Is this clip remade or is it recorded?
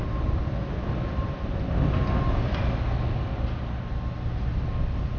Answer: recorded